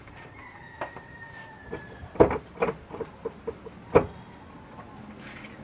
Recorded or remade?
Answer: recorded